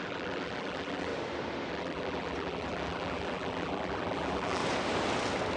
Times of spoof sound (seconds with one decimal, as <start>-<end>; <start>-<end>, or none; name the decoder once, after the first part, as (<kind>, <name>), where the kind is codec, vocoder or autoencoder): 0.0-1.1 (vocoder, BigVGAN v2); 1.7-4.6